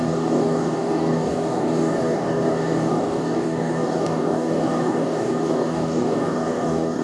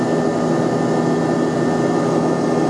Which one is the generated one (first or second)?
first